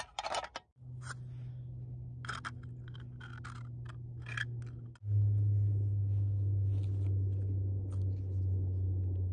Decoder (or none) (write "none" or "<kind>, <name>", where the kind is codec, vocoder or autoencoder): none